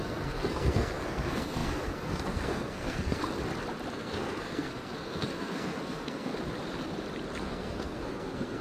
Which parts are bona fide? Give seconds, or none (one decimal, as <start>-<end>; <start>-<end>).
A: 3.2-3.9; 6.3-7.4